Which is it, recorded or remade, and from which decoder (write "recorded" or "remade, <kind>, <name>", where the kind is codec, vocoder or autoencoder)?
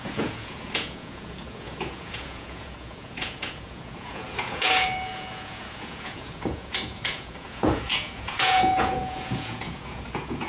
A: remade, vocoder, Vocos